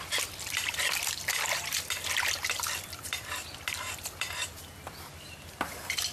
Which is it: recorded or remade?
remade